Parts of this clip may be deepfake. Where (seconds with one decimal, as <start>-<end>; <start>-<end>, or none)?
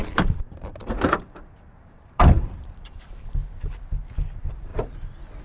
0.0-3.4; 4.1-4.7